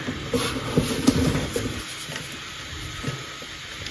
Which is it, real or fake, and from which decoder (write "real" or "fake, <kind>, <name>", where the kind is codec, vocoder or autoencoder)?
real